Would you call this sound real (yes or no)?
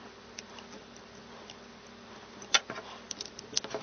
yes